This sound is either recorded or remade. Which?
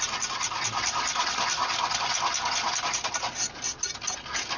recorded